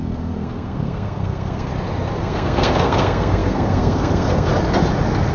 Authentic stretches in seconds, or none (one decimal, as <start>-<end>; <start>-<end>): 1.7-2.2; 4.5-5.3

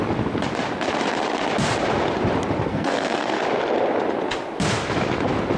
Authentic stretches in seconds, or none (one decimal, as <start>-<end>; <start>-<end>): 0.0-2.7; 3.4-5.6

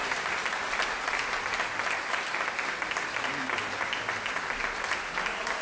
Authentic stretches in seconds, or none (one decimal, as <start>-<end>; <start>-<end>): 0.0-5.6

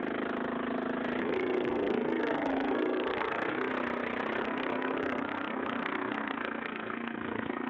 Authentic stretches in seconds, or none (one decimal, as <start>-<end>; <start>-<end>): 0.0-1.2; 3.7-4.4

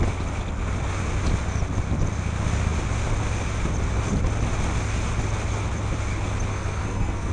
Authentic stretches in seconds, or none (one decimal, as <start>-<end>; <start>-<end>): 0.0-6.5

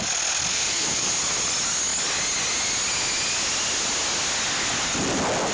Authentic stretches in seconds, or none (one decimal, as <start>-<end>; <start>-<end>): 0.0-0.5; 1.1-5.5